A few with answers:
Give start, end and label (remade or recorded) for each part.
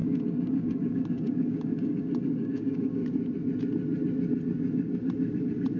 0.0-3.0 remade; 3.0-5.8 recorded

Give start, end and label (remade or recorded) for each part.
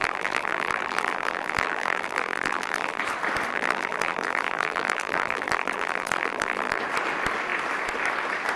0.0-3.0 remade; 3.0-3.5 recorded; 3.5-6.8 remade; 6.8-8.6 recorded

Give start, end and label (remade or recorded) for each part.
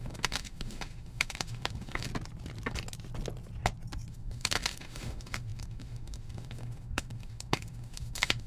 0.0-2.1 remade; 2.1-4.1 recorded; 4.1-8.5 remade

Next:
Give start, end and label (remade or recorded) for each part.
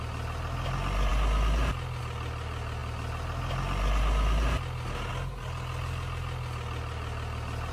0.0-7.7 recorded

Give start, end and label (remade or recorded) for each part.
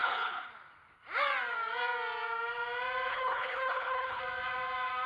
0.0-0.5 remade; 0.5-3.1 recorded; 3.1-4.2 remade; 4.2-5.1 recorded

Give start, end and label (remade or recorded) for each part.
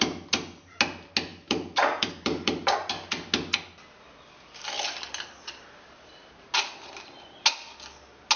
0.0-1.3 recorded; 1.3-2.9 remade; 2.9-8.4 recorded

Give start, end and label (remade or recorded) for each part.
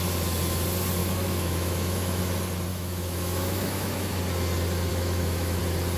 0.0-1.0 recorded; 1.0-2.2 remade; 2.2-2.7 recorded; 2.7-4.2 remade; 4.2-4.9 recorded; 4.9-5.6 remade; 5.6-6.0 recorded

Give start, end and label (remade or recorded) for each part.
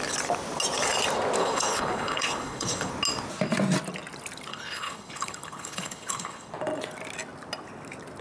0.0-1.4 recorded; 1.4-2.9 remade; 2.9-4.5 recorded; 4.5-6.5 remade; 6.5-8.2 recorded